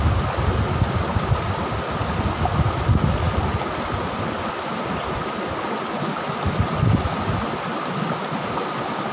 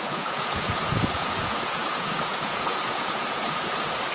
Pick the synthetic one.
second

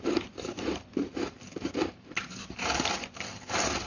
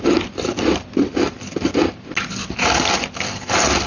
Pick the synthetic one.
first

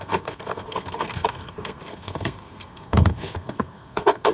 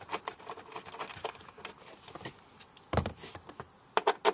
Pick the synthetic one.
first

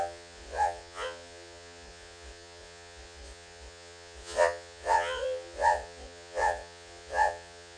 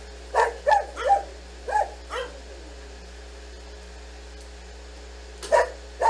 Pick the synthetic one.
first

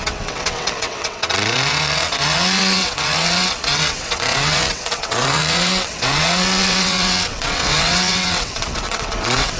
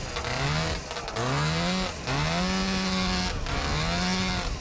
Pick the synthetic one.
first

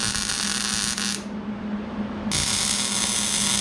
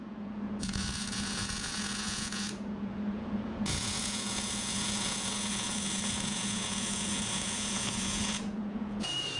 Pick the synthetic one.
second